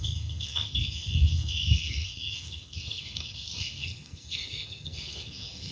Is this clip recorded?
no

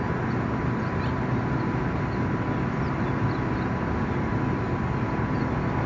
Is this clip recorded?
yes